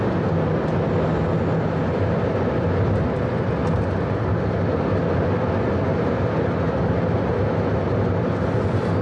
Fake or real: real